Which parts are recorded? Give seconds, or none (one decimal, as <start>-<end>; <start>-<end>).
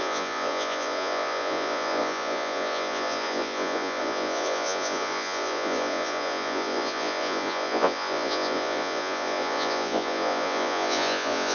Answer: none